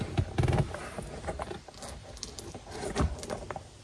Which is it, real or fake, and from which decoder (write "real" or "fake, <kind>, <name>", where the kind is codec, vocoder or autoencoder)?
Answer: real